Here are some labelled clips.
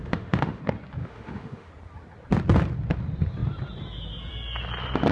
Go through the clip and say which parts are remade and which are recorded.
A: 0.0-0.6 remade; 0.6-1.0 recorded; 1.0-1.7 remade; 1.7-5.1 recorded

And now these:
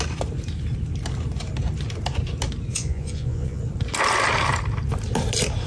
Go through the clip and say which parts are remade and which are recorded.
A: 0.0-2.7 recorded; 2.7-3.6 remade; 3.6-5.7 recorded

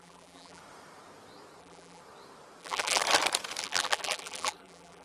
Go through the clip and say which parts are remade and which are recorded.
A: 0.0-0.6 remade; 0.6-1.6 recorded; 1.6-2.0 remade; 2.0-2.6 recorded; 2.6-3.0 remade; 3.0-3.6 recorded; 3.6-5.0 remade

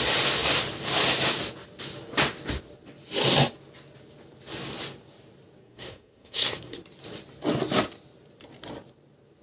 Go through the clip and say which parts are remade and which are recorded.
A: 0.0-5.6 recorded; 5.6-6.8 remade; 6.8-9.4 recorded

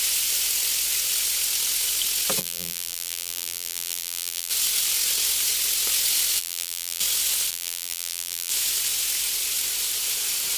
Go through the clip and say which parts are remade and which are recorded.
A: 0.0-2.4 recorded; 2.4-4.5 remade; 4.5-6.4 recorded; 6.4-7.0 remade; 7.0-7.5 recorded; 7.5-8.5 remade; 8.5-10.6 recorded